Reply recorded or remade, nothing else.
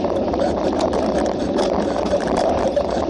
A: remade